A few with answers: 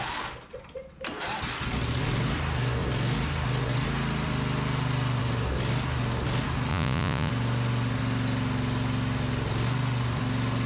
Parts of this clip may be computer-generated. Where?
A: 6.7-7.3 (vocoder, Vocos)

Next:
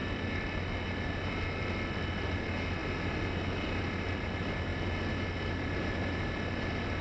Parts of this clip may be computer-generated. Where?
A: none

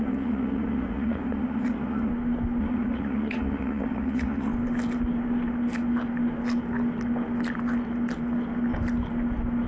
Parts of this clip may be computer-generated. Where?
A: 0.0-2.1 (vocoder, Vocos); 2.6-4.5

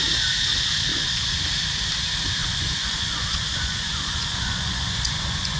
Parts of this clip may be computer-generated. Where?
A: 0.9-1.4 (vocoder, Vocos); 2.4-5.6

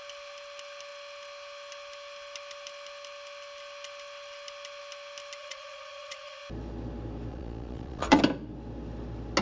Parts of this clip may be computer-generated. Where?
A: 5.4-6.4 (vocoder, Vocos); 7.3-8.2